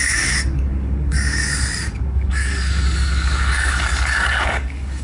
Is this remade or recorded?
remade